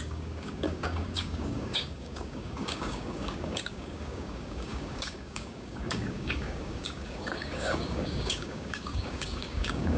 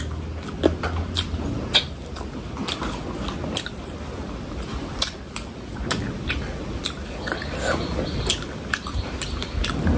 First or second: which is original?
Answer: second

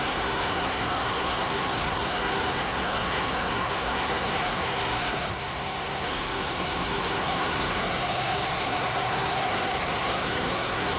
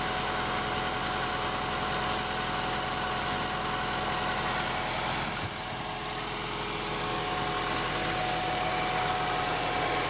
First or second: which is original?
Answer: second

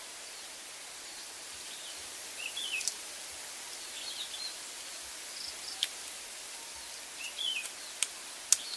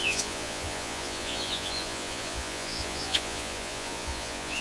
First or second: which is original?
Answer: first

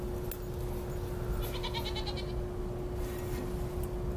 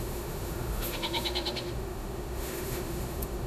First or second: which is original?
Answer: first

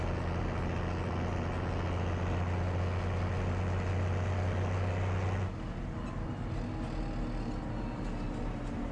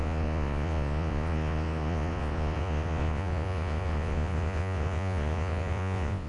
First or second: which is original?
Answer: first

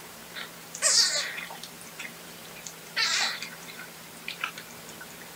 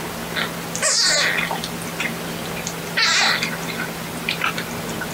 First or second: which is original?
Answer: second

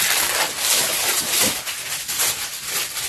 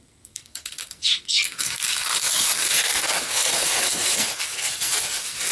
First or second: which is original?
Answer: first